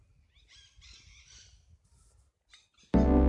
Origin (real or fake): real